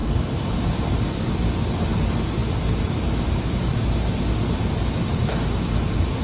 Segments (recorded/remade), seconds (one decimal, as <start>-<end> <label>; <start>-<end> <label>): 0.0-1.0 remade; 1.0-6.2 recorded